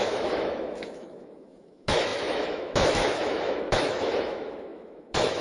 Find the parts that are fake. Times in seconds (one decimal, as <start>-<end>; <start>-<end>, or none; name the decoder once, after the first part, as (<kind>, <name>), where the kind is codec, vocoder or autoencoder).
0.0-5.4 (autoencoder, DAC-VAE)